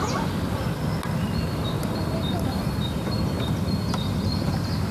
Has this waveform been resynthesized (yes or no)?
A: no